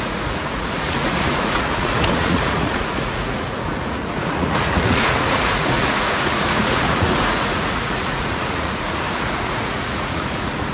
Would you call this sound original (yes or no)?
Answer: no